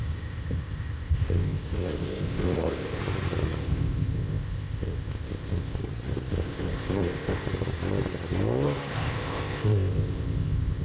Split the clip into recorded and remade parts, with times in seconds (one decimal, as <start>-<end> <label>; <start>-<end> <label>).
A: 0.0-3.0 remade; 3.0-3.6 recorded; 3.6-5.8 remade; 5.8-6.3 recorded; 6.3-7.4 remade; 7.4-8.9 recorded; 8.9-10.8 remade